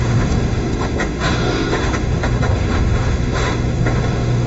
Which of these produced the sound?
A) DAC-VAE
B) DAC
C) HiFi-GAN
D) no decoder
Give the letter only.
A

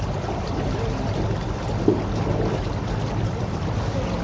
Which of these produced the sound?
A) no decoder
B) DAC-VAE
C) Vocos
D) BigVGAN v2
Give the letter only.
A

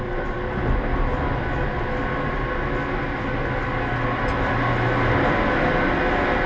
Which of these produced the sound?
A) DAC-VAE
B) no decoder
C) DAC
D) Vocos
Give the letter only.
B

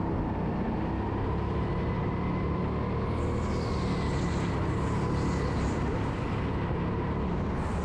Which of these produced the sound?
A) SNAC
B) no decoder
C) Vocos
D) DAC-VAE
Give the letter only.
B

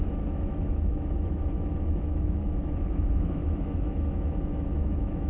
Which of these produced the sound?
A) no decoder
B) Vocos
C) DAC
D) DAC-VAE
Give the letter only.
D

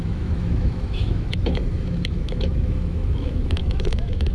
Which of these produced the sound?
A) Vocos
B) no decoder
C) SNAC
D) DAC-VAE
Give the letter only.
D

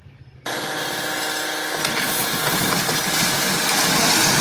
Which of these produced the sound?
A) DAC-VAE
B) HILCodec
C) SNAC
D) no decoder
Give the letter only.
D